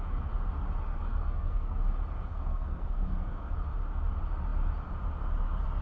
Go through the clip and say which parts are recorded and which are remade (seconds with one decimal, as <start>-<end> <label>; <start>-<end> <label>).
0.0-0.9 recorded; 0.9-1.8 remade; 1.8-2.3 recorded; 2.3-3.5 remade; 3.5-5.8 recorded